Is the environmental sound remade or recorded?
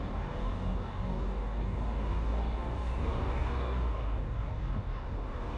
remade